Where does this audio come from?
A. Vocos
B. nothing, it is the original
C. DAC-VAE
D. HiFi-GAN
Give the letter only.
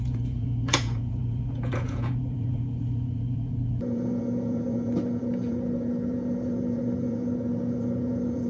A